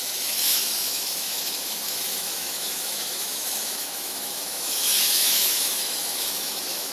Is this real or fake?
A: fake